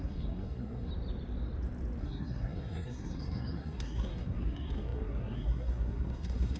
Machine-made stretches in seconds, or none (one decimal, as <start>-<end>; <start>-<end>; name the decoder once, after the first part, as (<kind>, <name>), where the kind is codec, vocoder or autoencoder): 0.0-0.9 (codec, SNAC); 2.0-6.6